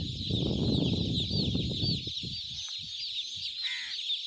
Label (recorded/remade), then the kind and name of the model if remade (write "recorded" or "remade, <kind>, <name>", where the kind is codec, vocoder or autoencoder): recorded